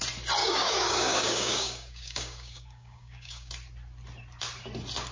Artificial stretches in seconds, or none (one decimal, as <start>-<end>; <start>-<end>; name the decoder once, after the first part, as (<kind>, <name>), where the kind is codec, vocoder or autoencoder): 0.4-3.5 (codec, DAC)